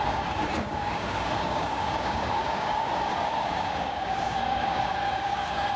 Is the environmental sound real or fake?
fake